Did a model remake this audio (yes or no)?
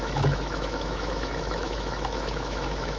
yes